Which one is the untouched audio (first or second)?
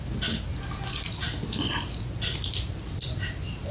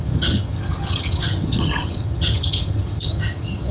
first